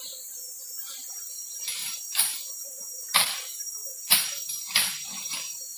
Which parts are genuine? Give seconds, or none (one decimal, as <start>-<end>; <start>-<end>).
3.8-5.3